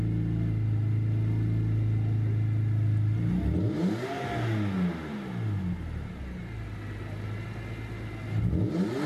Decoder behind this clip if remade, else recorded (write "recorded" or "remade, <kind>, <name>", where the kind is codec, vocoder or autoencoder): recorded